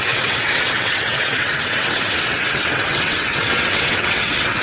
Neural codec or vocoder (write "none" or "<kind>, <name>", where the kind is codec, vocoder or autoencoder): vocoder, WaveNeXt